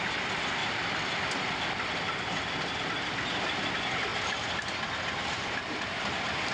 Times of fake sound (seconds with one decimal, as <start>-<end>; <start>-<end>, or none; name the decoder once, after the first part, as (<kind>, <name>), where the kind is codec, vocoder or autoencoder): 0.0-0.6 (vocoder, BigVGAN v2); 2.6-6.5